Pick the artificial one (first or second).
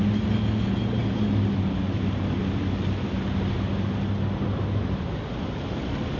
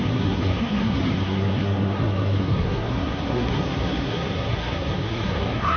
second